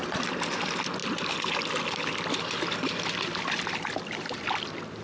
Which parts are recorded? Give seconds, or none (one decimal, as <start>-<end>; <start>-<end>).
0.0-5.0

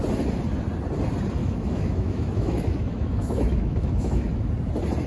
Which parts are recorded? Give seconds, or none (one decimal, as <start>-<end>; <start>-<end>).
0.0-1.4; 4.5-5.1

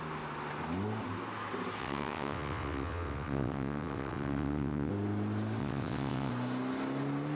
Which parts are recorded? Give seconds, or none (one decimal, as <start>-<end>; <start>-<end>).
0.0-1.8; 4.9-5.6; 6.3-7.4

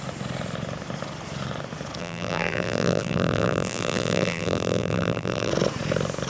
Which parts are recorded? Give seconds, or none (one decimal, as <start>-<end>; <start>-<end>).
0.0-2.0; 5.5-6.3

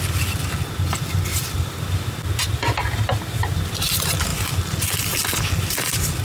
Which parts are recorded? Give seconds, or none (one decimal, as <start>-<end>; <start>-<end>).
0.0-1.3; 1.8-6.2

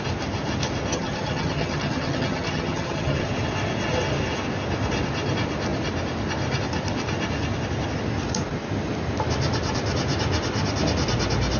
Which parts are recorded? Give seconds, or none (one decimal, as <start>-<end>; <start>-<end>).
0.0-0.9; 3.3-11.6

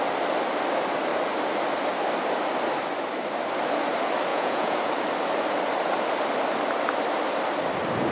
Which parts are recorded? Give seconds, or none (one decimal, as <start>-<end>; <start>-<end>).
0.0-4.3; 4.8-8.1